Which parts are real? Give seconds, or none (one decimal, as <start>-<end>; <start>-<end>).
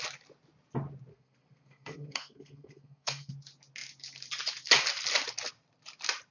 0.0-1.1; 3.3-6.3